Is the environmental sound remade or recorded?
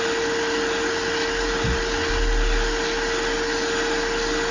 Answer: recorded